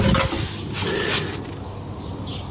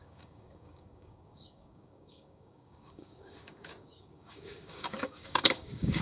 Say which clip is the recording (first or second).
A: first